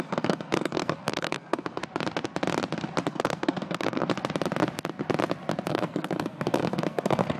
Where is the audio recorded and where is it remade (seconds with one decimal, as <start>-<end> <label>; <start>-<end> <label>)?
0.0-1.8 remade; 1.8-3.1 recorded; 3.1-4.0 remade; 4.0-5.7 recorded; 5.7-7.4 remade